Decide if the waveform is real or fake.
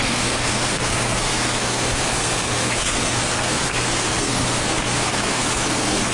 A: fake